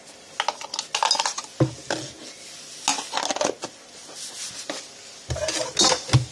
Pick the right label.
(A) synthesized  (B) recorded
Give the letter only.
B